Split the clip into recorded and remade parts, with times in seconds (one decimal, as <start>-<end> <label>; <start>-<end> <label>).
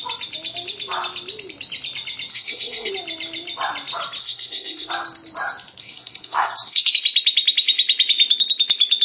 0.0-2.3 recorded; 2.3-2.9 remade; 2.9-4.2 recorded; 4.2-4.9 remade; 4.9-5.8 recorded; 5.8-6.9 remade; 6.9-9.0 recorded